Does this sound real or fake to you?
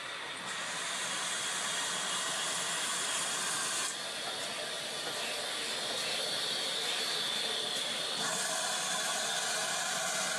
real